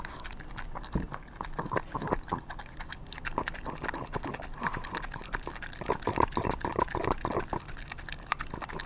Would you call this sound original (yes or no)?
yes